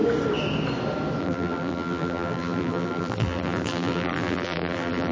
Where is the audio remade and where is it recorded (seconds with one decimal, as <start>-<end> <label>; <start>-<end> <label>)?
0.0-1.2 recorded; 1.2-5.1 remade